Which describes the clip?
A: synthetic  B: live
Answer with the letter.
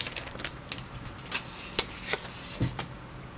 B